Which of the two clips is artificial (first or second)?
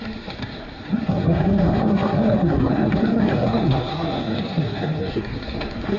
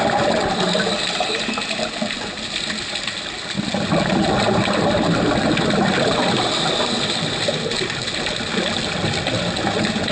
first